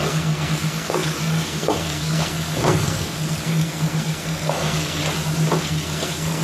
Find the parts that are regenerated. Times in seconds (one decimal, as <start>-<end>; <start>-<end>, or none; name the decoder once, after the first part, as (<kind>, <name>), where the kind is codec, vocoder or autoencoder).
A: 0.0-5.0 (codec, SNAC); 5.6-6.4